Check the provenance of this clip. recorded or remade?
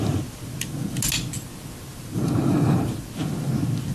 recorded